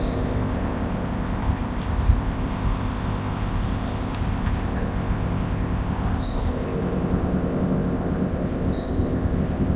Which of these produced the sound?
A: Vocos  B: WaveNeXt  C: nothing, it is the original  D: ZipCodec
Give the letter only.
D